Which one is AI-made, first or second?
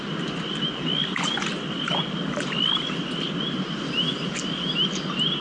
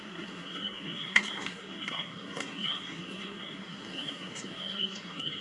second